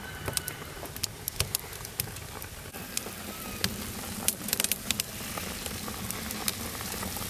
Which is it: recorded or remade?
remade